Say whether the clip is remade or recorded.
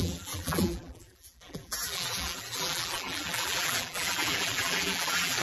remade